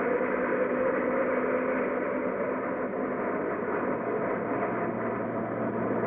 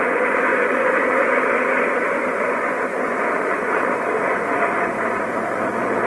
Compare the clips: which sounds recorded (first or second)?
first